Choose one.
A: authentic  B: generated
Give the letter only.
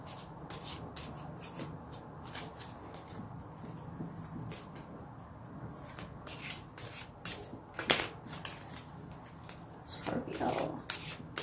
A